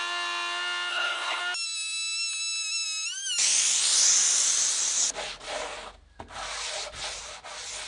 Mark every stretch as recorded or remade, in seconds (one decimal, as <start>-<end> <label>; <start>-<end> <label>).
0.0-0.9 recorded; 0.9-1.4 remade; 1.4-7.9 recorded